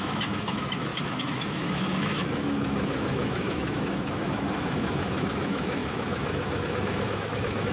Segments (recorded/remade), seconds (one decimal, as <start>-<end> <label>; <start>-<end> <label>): 0.0-7.7 remade